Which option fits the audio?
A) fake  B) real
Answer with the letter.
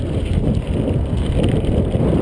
A